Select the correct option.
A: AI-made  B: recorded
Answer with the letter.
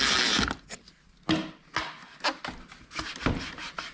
B